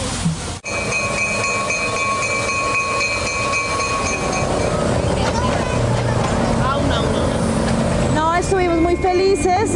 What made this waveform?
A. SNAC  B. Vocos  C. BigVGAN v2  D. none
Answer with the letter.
D